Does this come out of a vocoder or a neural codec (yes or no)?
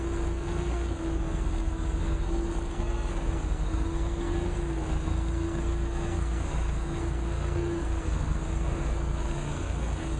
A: yes